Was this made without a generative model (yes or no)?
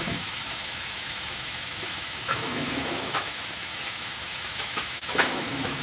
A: no